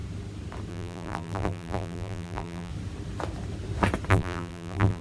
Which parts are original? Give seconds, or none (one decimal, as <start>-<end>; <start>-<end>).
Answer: 0.0-0.7; 2.7-4.1